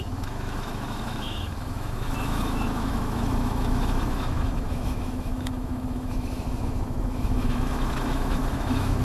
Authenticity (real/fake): fake